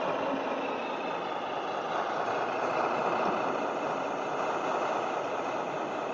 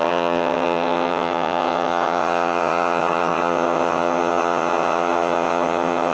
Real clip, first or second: first